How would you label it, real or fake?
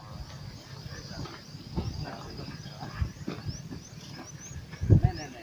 real